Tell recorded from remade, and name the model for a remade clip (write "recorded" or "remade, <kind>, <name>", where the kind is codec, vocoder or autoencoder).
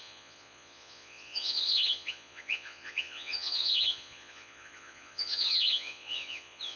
remade, vocoder, Vocos